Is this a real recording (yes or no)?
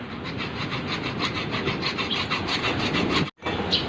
yes